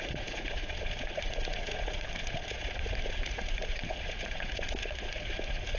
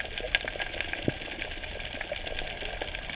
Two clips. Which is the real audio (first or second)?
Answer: second